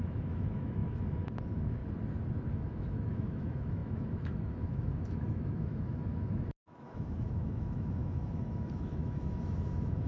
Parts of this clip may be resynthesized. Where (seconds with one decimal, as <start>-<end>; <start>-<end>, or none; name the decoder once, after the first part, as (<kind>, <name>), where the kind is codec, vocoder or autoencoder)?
0.0-1.8 (autoencoder, DAC-VAE); 2.5-10.1